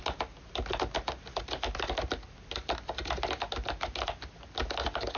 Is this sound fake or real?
real